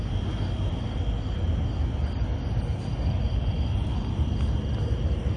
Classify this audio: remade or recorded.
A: recorded